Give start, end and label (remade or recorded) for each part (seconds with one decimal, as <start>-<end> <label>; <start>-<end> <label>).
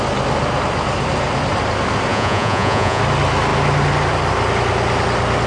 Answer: 0.0-2.1 recorded; 2.1-3.0 remade; 3.0-5.5 recorded